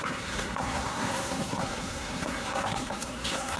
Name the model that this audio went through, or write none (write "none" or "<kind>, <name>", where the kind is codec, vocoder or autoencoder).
codec, SNAC